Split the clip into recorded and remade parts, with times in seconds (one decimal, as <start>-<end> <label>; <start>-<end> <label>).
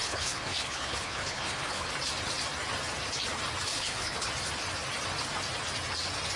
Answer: 0.0-1.9 remade; 1.9-3.7 recorded; 3.7-4.3 remade; 4.3-6.4 recorded